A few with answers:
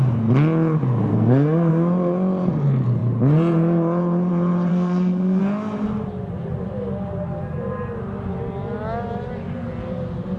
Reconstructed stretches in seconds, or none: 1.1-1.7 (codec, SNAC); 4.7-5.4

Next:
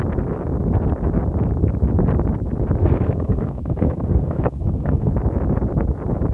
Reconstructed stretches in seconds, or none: 2.8-5.1 (codec, SNAC)